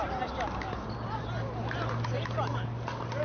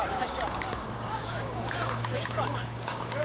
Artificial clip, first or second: second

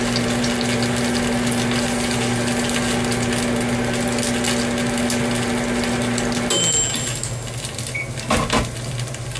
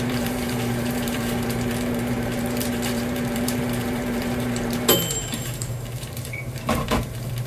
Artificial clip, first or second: second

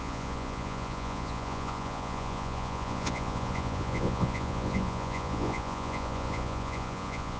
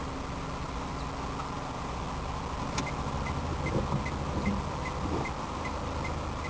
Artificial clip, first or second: first